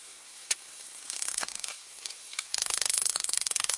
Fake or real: fake